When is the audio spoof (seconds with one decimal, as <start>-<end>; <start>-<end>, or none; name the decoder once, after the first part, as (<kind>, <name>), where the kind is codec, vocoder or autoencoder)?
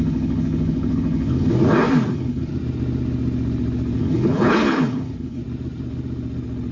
0.0-1.5 (codec, HILCodec); 2.1-2.5; 4.0-5.4